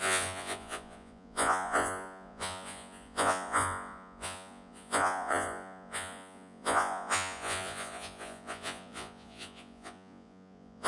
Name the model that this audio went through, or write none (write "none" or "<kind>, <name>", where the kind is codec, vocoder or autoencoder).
vocoder, Vocos